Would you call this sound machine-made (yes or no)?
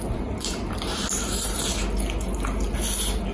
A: no